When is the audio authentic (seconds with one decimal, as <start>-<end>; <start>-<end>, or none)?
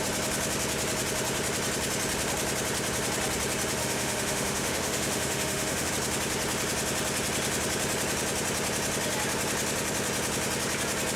0.0-3.8; 5.9-11.2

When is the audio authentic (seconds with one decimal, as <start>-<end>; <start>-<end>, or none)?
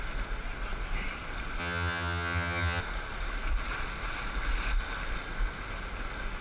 0.0-1.6; 2.8-6.4